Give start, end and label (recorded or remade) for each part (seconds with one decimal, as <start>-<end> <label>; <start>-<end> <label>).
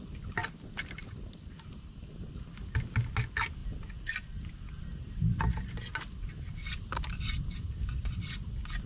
0.0-8.9 recorded